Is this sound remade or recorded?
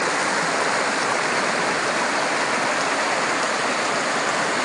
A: recorded